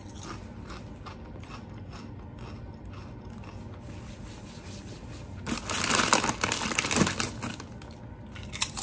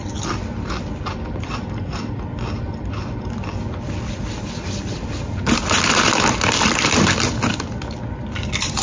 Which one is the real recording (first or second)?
first